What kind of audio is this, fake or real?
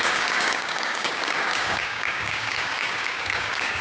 fake